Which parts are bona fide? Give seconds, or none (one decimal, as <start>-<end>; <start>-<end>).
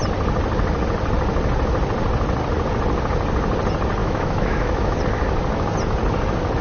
0.0-4.0; 5.0-6.6